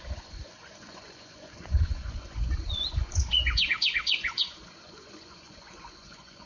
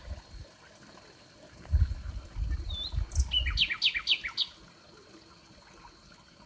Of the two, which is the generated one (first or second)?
first